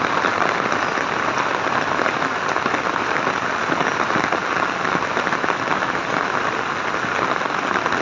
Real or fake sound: real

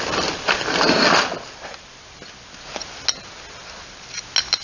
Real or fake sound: real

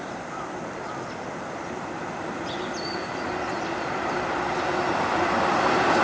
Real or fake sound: fake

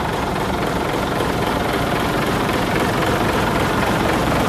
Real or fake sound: fake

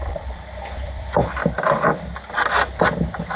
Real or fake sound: fake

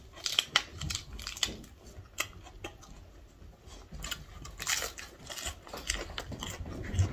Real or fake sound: real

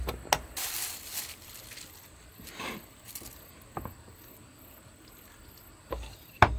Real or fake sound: real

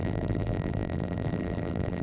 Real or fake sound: fake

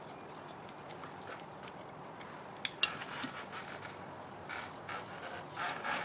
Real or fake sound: real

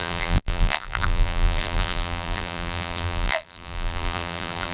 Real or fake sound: fake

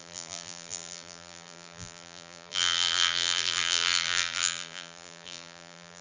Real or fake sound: fake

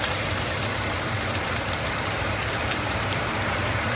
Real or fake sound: fake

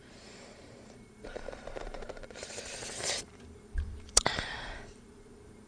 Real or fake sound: fake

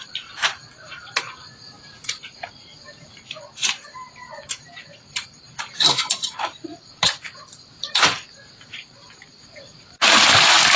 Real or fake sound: fake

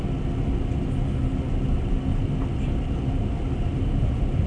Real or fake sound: real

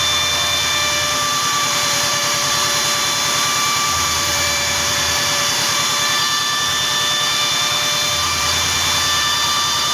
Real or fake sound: fake